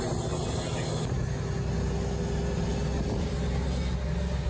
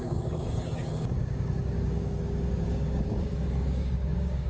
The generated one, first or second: second